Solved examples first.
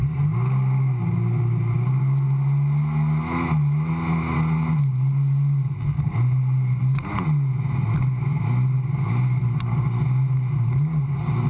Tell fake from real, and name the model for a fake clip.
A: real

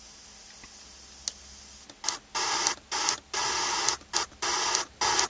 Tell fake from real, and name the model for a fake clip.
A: real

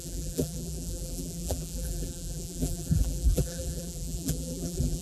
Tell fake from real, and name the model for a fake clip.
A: fake, vocoder, BigVGAN v2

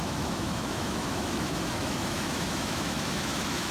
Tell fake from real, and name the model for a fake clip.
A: fake, autoencoder, DAC-VAE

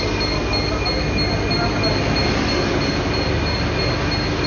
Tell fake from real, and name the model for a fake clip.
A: real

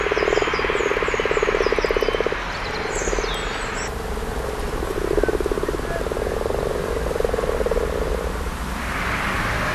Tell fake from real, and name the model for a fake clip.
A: real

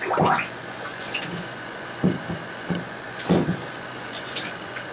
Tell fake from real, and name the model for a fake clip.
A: fake, vocoder, Vocos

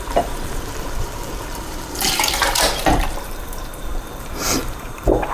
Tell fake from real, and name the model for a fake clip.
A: fake, vocoder, BigVGAN v2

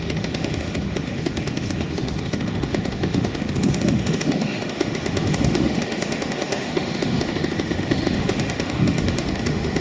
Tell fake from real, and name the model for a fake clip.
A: fake, autoencoder, DAC-VAE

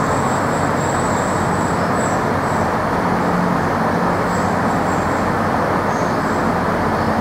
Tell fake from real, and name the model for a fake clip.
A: real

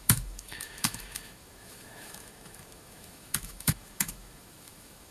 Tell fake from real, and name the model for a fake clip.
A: fake, autoencoder, DAC-VAE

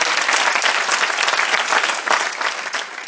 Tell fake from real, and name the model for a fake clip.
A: real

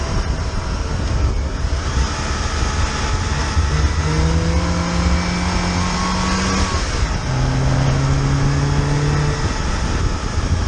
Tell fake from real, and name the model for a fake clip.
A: real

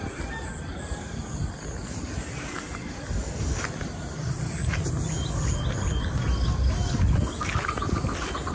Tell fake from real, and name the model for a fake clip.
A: real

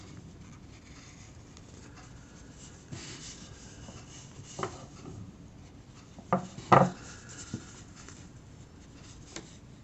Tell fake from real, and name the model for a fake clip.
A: real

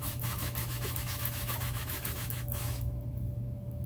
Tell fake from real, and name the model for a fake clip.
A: fake, autoencoder, DAC-VAE